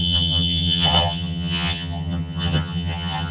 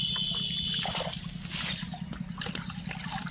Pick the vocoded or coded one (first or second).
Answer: first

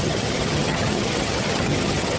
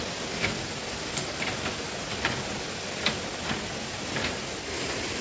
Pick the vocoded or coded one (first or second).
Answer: first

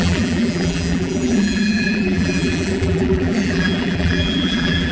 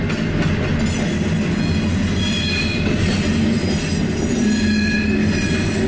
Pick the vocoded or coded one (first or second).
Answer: first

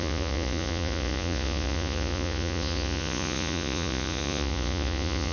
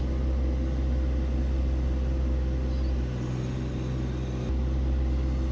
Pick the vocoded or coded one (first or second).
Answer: first